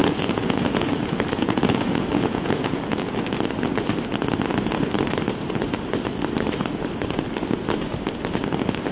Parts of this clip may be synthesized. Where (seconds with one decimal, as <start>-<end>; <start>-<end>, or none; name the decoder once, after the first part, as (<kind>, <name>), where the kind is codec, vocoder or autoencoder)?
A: 0.0-3.2 (vocoder, Vocos)